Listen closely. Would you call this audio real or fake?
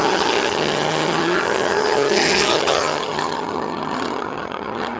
fake